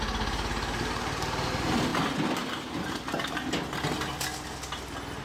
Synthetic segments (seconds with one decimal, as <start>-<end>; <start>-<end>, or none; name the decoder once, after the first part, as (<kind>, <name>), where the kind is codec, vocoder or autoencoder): none